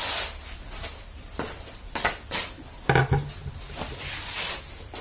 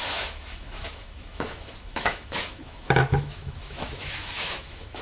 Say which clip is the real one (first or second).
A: first